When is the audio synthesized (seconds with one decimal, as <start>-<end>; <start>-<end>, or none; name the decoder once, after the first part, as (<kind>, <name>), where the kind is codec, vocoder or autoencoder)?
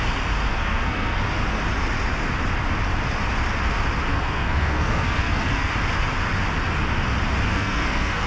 0.5-1.2 (codec, SNAC); 4.1-5.7; 7.5-8.3